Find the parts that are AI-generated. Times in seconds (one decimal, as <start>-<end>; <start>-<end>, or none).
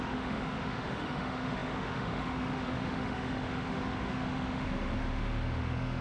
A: 0.0-6.0